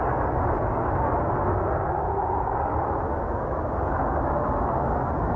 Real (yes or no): yes